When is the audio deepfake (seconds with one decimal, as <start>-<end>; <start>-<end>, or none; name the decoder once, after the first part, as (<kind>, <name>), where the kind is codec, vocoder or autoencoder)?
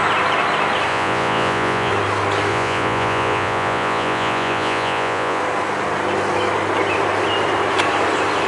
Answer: 0.9-1.9 (vocoder, Vocos); 2.5-5.4